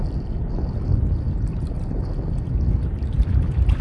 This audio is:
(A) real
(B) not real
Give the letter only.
A